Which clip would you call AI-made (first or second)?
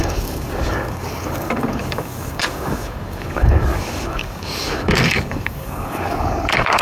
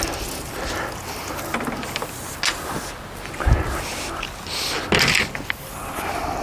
first